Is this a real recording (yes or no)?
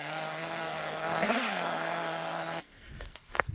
no